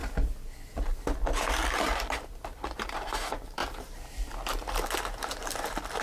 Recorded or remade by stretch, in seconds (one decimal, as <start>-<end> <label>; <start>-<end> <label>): 0.0-2.8 recorded; 2.8-3.6 remade; 3.6-6.0 recorded